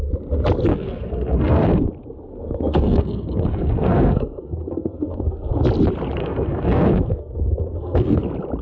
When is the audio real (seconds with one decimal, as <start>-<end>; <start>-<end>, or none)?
0.0-0.7; 1.8-2.3; 5.5-6.2; 8.2-8.6